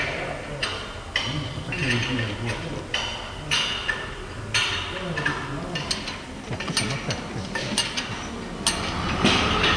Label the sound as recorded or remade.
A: recorded